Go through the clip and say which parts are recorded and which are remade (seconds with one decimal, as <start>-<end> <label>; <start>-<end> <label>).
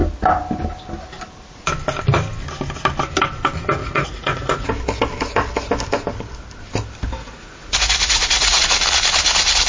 0.0-3.8 recorded; 3.8-4.7 remade; 4.7-7.2 recorded; 7.2-8.6 remade; 8.6-9.7 recorded